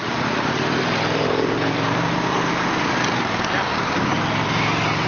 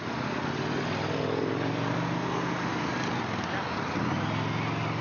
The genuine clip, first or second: second